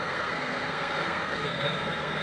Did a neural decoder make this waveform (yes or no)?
yes